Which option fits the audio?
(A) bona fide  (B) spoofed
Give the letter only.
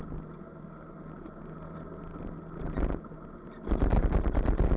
A